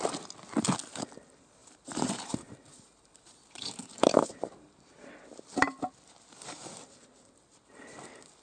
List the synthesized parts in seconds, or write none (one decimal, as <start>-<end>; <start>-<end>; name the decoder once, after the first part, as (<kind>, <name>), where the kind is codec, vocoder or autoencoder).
1.6-5.1 (vocoder, BigVGAN v2)